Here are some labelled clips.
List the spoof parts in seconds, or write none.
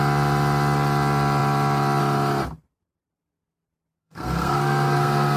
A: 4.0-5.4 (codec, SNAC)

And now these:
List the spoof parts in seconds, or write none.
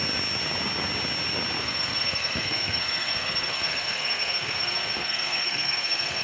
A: 1.6-6.2 (codec, SNAC)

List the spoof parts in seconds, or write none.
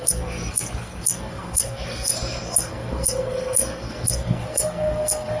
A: 0.0-5.4 (codec, SNAC)